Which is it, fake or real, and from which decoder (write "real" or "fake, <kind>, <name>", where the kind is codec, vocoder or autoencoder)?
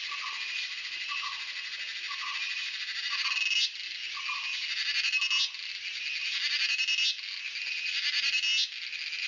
real